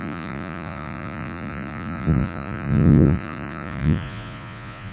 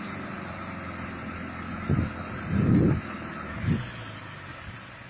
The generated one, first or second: first